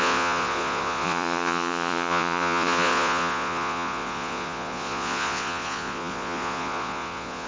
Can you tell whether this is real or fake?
fake